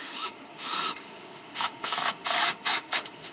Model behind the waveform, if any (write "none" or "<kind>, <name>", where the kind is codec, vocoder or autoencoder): autoencoder, DAC-VAE